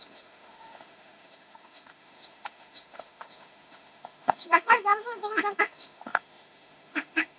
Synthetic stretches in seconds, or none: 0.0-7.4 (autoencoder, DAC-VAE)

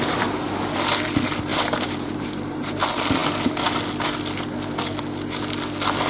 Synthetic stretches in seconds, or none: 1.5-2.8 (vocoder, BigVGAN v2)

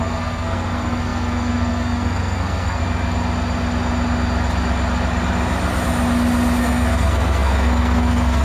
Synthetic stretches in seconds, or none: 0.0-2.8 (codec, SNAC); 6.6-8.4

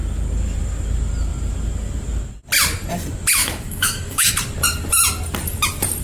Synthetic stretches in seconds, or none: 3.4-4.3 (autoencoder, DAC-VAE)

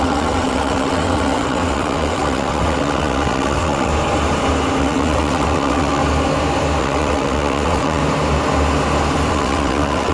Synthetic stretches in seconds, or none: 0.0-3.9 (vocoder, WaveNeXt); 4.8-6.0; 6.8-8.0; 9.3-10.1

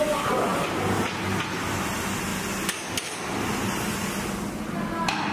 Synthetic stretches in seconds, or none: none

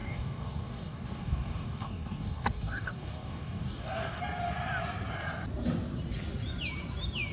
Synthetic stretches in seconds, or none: 0.0-4.2 (codec, DAC)

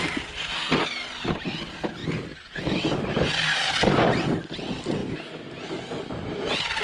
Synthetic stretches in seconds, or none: none